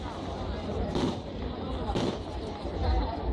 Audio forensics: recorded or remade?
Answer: recorded